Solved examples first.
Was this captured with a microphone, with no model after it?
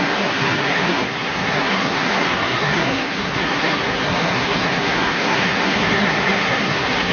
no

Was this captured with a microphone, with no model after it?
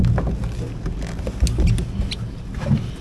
yes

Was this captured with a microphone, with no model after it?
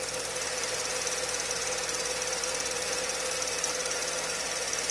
yes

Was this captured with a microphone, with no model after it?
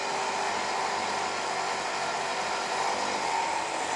yes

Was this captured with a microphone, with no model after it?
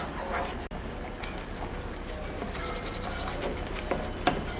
yes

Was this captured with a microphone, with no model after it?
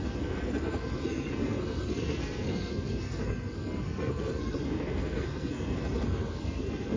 no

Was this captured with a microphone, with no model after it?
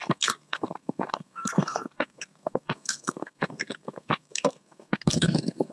no